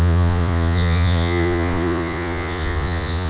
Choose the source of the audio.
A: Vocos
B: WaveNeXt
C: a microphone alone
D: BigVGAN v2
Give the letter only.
A